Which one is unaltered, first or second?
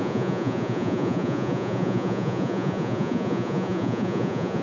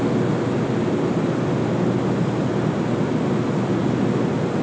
second